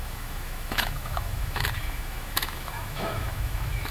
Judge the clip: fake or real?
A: fake